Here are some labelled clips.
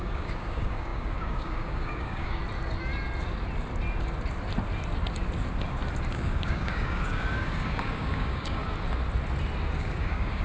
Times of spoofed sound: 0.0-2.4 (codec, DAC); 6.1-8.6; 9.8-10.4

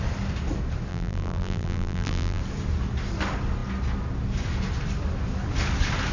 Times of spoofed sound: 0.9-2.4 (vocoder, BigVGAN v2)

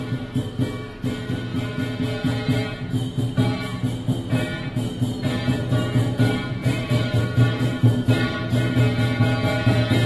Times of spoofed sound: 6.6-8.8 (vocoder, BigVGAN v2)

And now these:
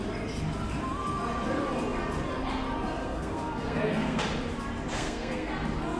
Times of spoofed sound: 3.0-4.2 (codec, SNAC); 4.9-5.5

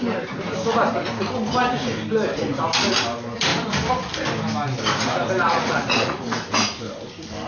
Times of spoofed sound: 5.4-6.2 (vocoder, Vocos)